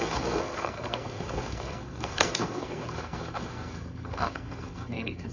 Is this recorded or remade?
remade